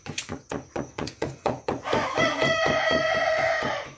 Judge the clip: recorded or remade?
remade